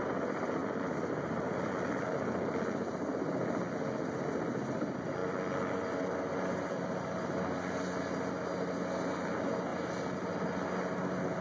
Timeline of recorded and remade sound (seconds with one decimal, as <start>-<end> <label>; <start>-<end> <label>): 0.0-0.6 recorded; 0.6-1.7 remade; 1.7-11.4 recorded